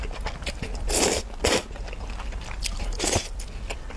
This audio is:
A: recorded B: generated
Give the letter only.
A